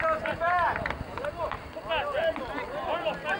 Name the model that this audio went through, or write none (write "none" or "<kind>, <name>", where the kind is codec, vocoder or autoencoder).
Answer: none